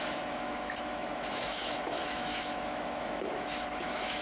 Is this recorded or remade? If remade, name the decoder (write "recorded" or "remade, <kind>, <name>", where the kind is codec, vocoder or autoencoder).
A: remade, autoencoder, DAC-VAE